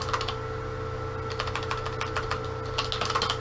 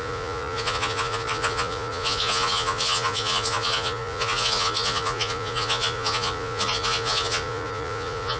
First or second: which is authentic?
first